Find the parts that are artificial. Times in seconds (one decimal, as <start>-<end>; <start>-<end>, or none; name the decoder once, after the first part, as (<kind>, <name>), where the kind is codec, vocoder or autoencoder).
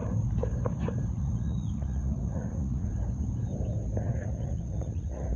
1.1-2.9 (vocoder, Vocos); 4.0-5.4